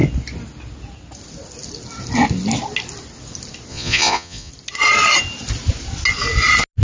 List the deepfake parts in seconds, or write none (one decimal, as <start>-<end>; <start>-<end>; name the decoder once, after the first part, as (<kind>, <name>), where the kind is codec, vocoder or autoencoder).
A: 3.7-4.5 (vocoder, Vocos)